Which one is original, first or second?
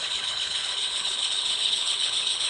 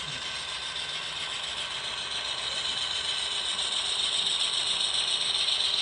second